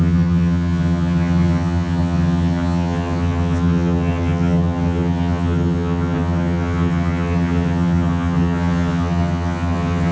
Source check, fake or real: fake